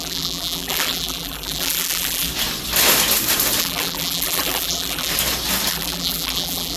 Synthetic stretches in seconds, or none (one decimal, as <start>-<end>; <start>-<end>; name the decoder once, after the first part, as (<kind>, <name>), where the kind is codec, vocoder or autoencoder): 0.0-2.3 (vocoder, BigVGAN v2); 3.6-5.1; 5.7-6.8